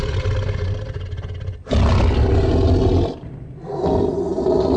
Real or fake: real